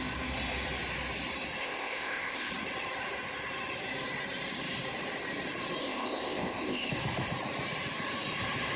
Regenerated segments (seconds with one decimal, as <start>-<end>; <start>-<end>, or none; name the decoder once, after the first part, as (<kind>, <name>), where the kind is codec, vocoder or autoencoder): 1.6-2.5 (codec, ZipCodec); 5.8-6.9